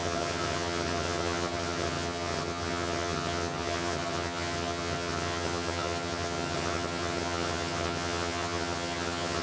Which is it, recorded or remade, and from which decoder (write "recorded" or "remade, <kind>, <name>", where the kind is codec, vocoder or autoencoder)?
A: remade, vocoder, HiFi-GAN